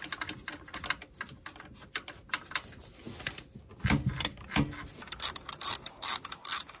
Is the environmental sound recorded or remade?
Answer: recorded